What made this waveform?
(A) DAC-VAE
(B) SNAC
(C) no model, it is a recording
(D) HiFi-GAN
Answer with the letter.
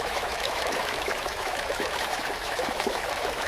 A